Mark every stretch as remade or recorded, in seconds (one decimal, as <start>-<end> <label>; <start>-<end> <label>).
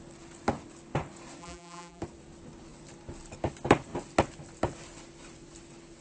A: 0.0-1.4 recorded; 1.4-2.0 remade; 2.0-6.0 recorded